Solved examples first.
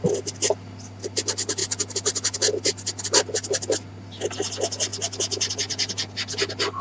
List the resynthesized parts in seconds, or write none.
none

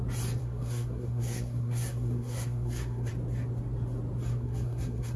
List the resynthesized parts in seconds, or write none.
0.4-3.1 (codec, SNAC); 4.3-5.2